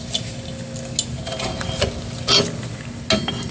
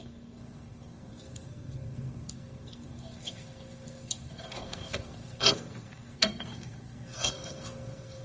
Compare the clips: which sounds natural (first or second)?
first